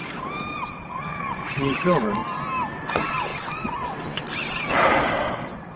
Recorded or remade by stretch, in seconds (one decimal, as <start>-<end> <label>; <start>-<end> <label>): 0.0-0.7 recorded; 0.7-2.2 remade; 2.2-2.7 recorded; 2.7-5.8 remade